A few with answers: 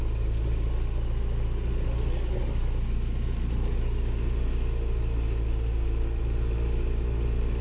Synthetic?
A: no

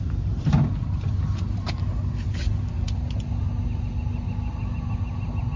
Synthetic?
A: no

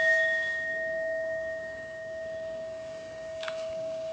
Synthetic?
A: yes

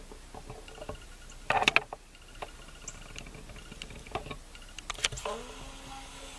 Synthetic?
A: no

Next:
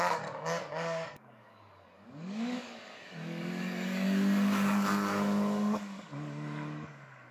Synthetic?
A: yes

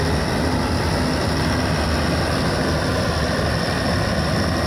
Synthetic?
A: no